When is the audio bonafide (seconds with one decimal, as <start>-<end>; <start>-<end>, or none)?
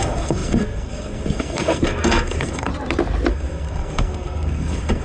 2.7-3.3